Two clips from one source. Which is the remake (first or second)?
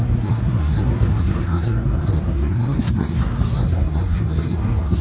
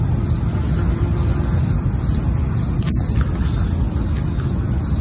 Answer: first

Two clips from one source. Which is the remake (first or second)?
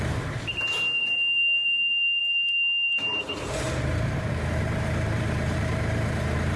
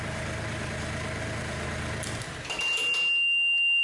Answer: first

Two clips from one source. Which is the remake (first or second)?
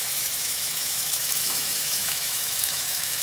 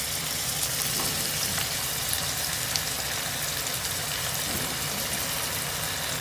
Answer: first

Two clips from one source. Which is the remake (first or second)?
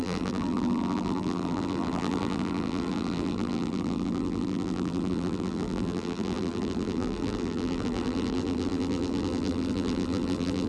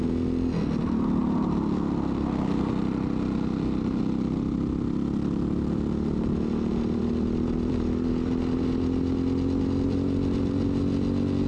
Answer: first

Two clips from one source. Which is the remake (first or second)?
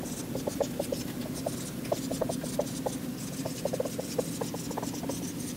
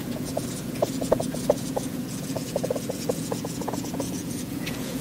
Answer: second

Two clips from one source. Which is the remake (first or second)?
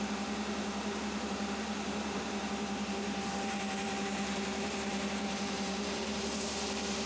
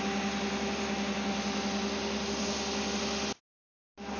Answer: first